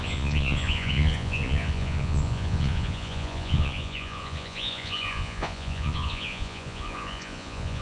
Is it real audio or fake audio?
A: fake